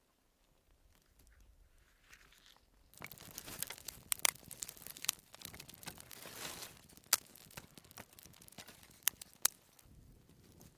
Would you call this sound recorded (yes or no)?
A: yes